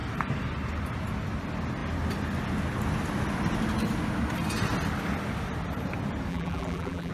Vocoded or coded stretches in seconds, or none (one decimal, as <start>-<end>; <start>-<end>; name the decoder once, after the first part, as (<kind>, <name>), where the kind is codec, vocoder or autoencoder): 6.3-7.1 (vocoder, BigVGAN v2)